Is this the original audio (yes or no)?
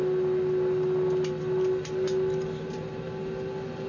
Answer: yes